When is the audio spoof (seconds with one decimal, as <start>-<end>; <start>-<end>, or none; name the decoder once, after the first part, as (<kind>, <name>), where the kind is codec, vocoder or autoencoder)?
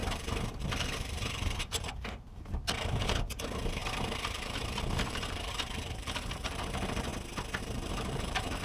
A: 0.0-7.1 (vocoder, BigVGAN v2); 7.6-8.6